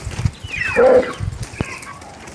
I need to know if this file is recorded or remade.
remade